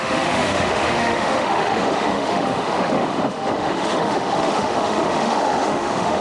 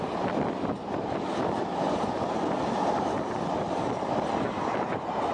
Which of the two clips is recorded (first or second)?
second